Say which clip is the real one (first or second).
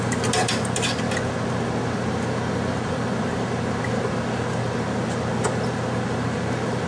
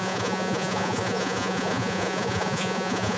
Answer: first